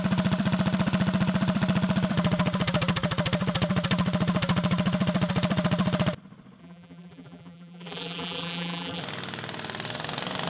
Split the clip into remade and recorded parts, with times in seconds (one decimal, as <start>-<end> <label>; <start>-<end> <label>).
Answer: 0.0-6.6 recorded; 6.6-9.0 remade; 9.0-10.5 recorded